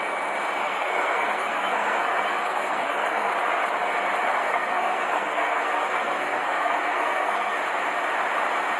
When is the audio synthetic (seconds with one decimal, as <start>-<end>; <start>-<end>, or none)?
0.6-3.3; 4.3-7.6